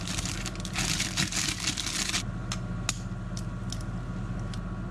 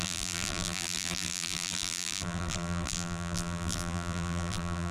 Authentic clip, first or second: first